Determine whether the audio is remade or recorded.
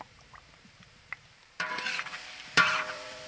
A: remade